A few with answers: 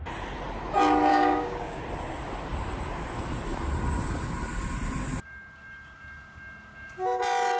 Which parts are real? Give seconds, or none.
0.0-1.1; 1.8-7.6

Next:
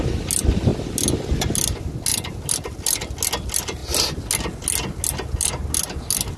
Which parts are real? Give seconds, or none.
0.0-6.4

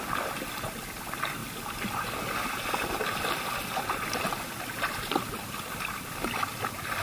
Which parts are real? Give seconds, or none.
0.0-7.0